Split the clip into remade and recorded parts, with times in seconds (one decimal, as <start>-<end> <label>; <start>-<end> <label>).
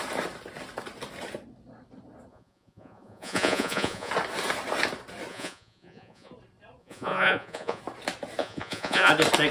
0.0-2.3 recorded; 2.3-4.1 remade; 4.1-5.3 recorded; 5.3-6.3 remade; 6.3-6.8 recorded; 6.8-7.8 remade; 7.8-8.4 recorded; 8.4-9.1 remade; 9.1-9.5 recorded